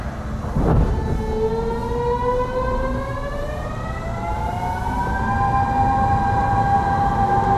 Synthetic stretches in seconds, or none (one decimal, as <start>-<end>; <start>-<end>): none